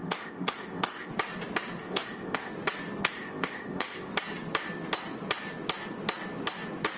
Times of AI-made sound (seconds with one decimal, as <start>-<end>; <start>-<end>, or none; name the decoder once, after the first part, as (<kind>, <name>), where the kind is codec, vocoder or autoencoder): 0.0-1.1 (codec, ZipCodec); 1.8-2.5; 3.0-4.1